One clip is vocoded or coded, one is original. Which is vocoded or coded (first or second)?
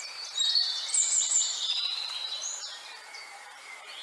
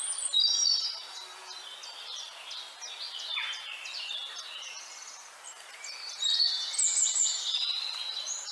first